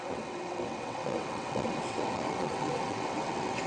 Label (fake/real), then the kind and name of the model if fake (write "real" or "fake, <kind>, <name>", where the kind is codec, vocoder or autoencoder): fake, vocoder, WaveNeXt